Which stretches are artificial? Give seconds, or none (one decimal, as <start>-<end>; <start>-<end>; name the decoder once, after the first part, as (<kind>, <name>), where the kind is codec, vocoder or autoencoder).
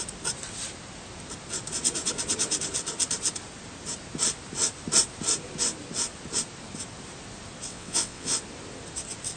7.7-8.3 (vocoder, WaveNeXt)